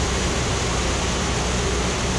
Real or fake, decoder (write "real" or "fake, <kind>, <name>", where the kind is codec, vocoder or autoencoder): real